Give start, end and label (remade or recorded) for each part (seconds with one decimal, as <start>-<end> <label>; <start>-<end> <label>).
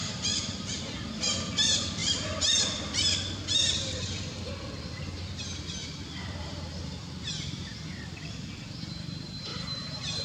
0.0-0.8 remade; 0.8-2.0 recorded; 2.0-4.5 remade; 4.5-5.8 recorded; 5.8-6.8 remade; 6.8-9.5 recorded; 9.5-10.2 remade